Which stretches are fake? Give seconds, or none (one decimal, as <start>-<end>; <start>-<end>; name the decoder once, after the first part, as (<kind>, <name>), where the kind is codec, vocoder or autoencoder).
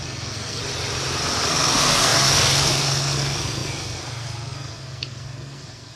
0.0-0.6 (codec, SNAC); 1.4-6.0